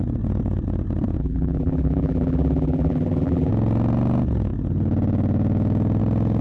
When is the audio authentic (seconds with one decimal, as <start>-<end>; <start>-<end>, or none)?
0.0-1.2; 3.5-6.4